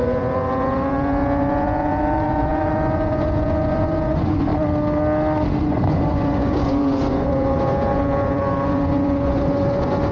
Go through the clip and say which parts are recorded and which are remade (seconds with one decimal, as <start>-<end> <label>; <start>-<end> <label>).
0.0-4.5 remade; 4.5-5.6 recorded; 5.6-10.1 remade